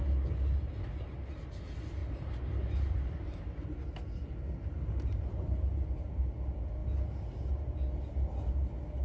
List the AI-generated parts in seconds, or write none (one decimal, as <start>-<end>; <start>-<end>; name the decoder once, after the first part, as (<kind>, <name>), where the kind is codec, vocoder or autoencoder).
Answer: 2.0-3.4 (vocoder, BigVGAN v2); 4.6-6.2